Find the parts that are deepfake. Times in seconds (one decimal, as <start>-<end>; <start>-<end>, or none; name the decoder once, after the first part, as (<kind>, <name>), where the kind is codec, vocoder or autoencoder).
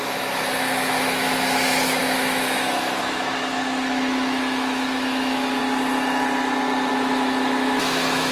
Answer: 0.0-5.6 (autoencoder, DAC-VAE); 6.9-8.3